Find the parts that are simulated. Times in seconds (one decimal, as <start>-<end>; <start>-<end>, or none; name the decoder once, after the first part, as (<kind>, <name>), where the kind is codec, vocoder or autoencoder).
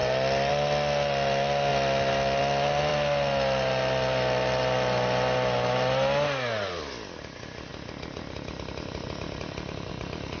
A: 1.7-2.4 (vocoder, BigVGAN v2); 7.7-9.9